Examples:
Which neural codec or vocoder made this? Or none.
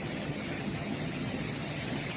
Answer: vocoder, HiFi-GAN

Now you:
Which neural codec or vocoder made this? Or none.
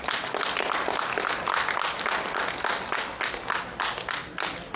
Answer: none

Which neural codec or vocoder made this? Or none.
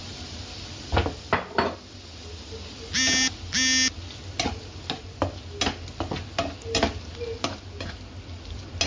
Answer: none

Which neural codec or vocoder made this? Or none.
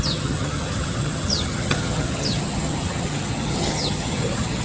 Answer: vocoder, HiFi-GAN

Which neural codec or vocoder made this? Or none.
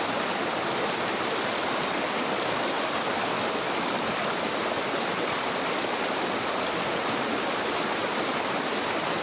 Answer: none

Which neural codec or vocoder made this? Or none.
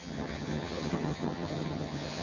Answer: vocoder, HiFi-GAN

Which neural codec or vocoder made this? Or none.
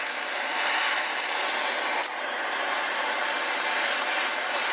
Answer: none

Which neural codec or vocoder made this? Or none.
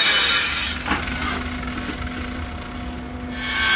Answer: none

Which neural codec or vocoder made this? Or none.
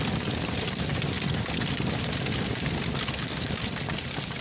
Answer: none